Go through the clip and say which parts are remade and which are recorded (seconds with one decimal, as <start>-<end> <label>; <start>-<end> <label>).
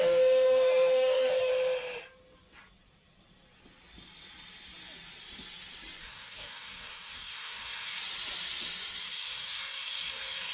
0.0-1.5 remade; 1.5-6.0 recorded; 6.0-8.0 remade; 8.0-9.0 recorded; 9.0-10.5 remade